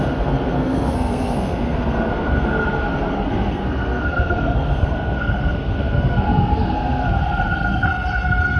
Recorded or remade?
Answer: remade